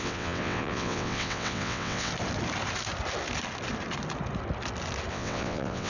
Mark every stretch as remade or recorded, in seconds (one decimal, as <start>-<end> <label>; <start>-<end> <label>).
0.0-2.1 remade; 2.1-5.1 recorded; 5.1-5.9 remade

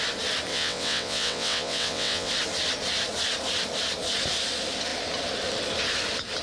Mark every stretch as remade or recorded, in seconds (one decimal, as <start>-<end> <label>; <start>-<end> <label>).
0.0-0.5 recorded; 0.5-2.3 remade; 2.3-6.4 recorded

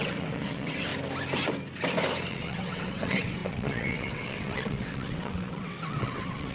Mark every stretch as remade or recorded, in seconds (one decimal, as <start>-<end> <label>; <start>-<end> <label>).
0.0-0.9 remade; 0.9-2.3 recorded; 2.3-6.5 remade